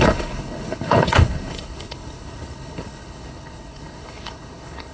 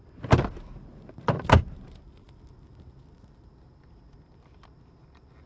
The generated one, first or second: first